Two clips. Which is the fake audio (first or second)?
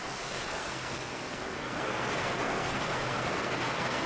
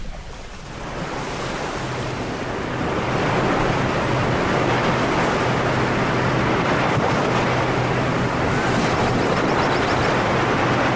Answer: first